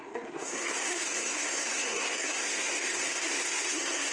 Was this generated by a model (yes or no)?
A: yes